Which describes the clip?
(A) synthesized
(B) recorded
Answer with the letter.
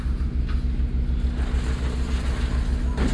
B